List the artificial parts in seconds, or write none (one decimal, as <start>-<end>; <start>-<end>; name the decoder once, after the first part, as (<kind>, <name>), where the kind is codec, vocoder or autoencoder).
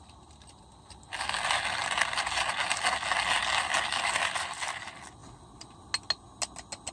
none